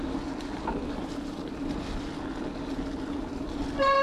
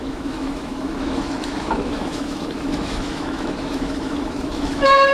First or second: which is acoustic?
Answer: first